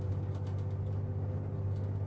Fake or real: real